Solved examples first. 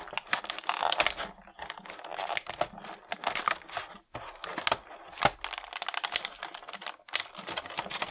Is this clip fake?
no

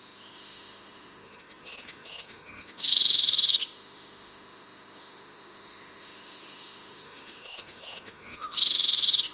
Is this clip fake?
yes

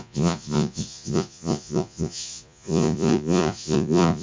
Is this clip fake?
yes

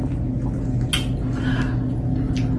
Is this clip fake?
no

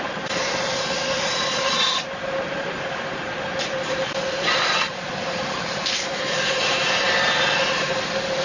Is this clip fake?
yes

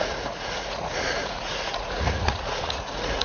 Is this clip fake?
yes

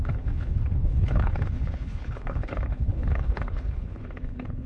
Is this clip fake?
yes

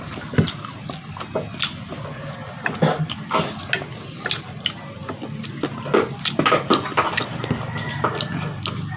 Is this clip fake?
no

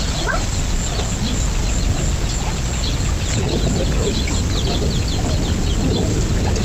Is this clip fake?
no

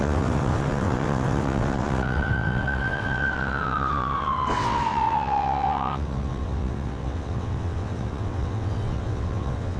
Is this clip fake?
yes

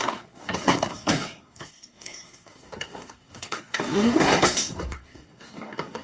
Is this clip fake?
yes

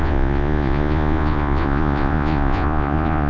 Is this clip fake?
yes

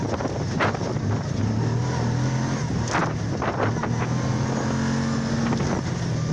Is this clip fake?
no